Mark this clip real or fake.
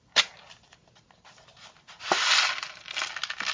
real